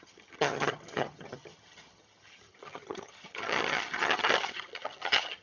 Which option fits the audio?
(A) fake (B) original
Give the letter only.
A